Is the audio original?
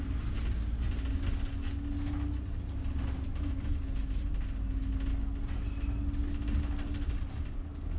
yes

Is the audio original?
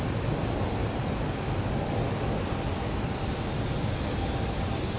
yes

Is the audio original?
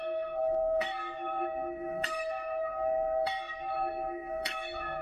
no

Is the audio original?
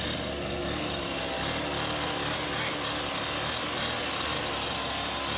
yes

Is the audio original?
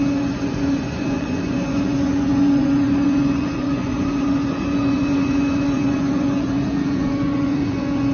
no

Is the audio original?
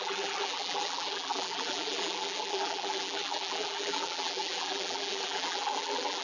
no